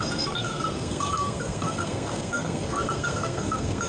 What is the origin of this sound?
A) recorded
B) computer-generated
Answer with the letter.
B